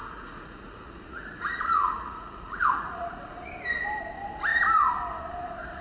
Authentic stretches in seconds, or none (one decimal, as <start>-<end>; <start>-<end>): 3.5-5.8